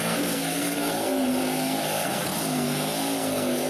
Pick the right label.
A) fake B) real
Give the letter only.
A